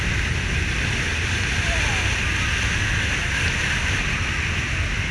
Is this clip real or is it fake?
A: real